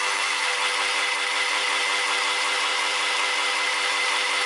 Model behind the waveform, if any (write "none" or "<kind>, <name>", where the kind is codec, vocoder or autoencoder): vocoder, BigVGAN v2